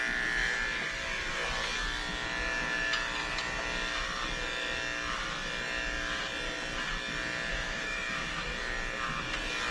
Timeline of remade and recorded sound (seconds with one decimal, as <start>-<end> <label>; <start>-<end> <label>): 0.0-7.5 recorded; 7.5-8.5 remade; 8.5-9.7 recorded